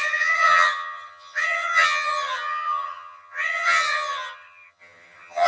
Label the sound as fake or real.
fake